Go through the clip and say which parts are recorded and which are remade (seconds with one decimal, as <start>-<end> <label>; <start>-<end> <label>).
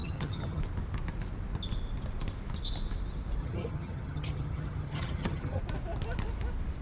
0.0-0.6 remade; 0.6-3.4 recorded; 3.4-5.6 remade; 5.6-6.8 recorded